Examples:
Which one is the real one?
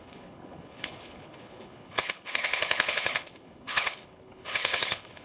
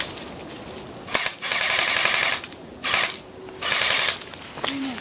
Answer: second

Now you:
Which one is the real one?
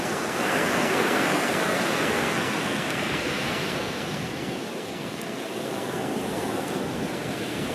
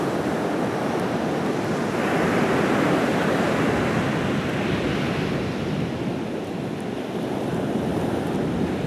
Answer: second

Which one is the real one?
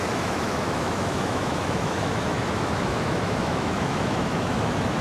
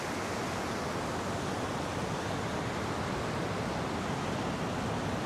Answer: second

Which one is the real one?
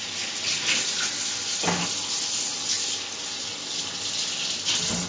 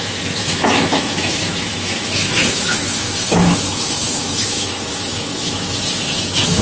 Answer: first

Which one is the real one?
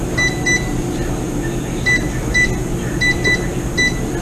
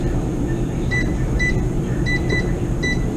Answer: first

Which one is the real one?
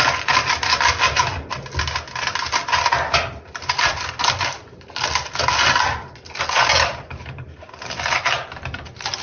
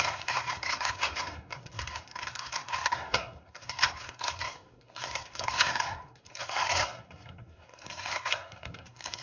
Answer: first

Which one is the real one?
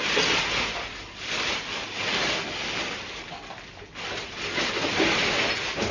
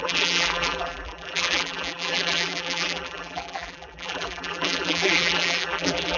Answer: first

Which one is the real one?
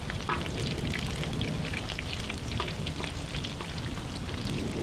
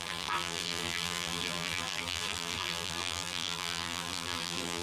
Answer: first